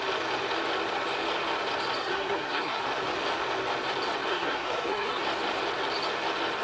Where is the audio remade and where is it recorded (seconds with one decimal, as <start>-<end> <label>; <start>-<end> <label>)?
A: 0.0-2.0 recorded; 2.0-2.8 remade; 2.8-4.3 recorded; 4.3-5.2 remade; 5.2-6.6 recorded